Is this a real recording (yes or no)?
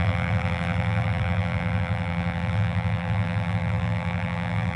no